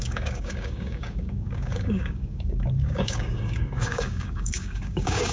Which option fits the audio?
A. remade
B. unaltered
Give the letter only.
A